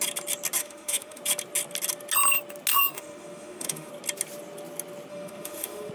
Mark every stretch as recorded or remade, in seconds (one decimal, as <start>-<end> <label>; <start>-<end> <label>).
0.0-0.6 recorded; 0.6-1.2 remade; 1.2-2.7 recorded; 2.7-3.9 remade; 3.9-5.1 recorded; 5.1-5.9 remade